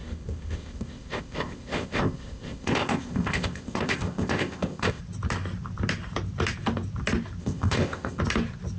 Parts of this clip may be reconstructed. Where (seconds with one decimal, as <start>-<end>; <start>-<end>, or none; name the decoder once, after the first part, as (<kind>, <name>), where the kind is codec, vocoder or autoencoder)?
0.0-5.0 (codec, ZipCodec); 7.4-8.2